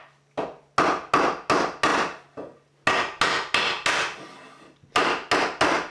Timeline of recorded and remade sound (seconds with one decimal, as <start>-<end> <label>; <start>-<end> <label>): 0.0-5.9 recorded